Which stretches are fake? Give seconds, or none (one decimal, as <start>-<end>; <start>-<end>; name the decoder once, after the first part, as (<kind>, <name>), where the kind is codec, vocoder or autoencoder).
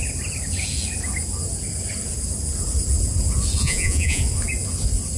3.6-4.2 (vocoder, Vocos)